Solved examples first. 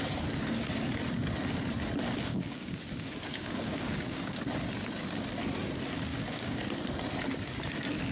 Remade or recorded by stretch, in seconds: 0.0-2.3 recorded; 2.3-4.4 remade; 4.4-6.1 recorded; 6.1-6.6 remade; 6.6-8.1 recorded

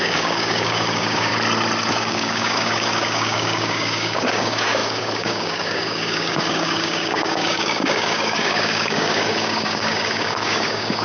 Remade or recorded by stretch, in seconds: 0.0-1.3 remade; 1.3-1.9 recorded; 1.9-11.0 remade

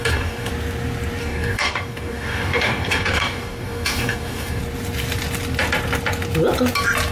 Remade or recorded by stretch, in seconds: 0.0-0.5 remade; 0.5-1.2 recorded; 1.2-4.6 remade; 4.6-7.1 recorded

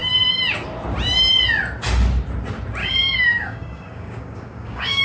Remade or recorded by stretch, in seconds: 0.0-2.8 recorded; 2.8-5.0 remade

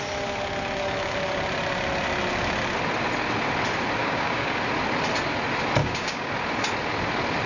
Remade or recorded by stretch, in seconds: 0.0-4.0 recorded; 4.0-4.6 remade; 4.6-5.8 recorded; 5.8-6.3 remade; 6.3-7.5 recorded

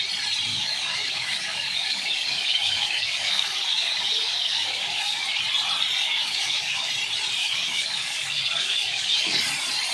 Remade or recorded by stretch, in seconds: 0.0-0.5 recorded; 0.5-5.4 remade; 5.4-6.0 recorded; 6.0-6.9 remade; 6.9-7.4 recorded; 7.4-9.4 remade; 9.4-9.9 recorded

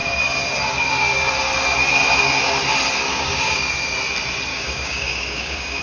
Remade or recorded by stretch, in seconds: 0.0-3.1 recorded; 3.1-3.7 remade; 3.7-4.5 recorded; 4.5-5.8 remade